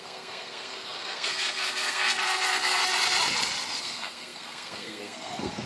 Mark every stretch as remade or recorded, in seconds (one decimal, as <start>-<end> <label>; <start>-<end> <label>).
0.0-2.8 remade; 2.8-3.8 recorded; 3.8-5.7 remade